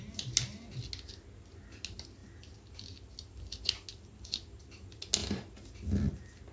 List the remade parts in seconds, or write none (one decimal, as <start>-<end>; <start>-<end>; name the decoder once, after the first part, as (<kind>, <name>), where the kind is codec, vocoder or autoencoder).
none

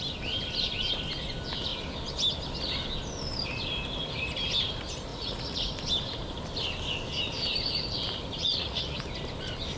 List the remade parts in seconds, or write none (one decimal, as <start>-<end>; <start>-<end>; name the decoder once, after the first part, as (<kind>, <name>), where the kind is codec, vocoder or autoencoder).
5.1-5.7 (vocoder, Vocos); 8.4-9.0

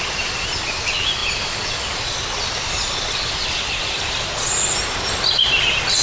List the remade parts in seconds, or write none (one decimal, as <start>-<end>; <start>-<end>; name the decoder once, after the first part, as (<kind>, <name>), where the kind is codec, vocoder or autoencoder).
none

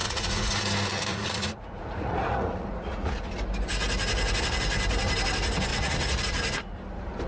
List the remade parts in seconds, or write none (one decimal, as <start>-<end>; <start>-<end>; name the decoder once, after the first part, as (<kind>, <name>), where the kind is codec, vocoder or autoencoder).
0.0-0.5 (vocoder, Vocos); 1.1-3.1; 5.7-6.2

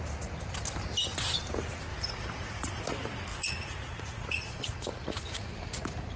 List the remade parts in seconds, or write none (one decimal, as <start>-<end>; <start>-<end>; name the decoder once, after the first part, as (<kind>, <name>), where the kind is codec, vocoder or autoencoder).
1.9-2.8 (vocoder, Vocos); 3.3-5.5